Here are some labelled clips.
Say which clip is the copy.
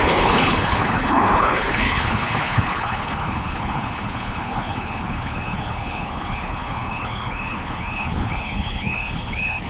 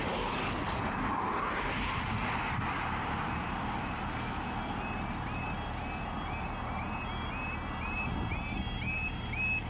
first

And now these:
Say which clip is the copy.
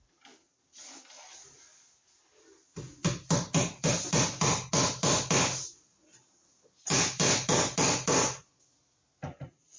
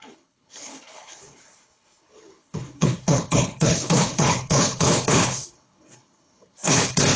second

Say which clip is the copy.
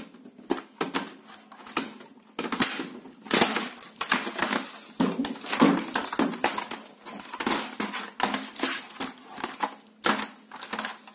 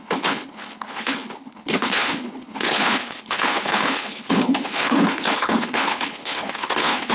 second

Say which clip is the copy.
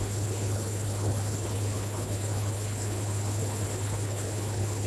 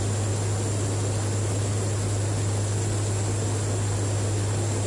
first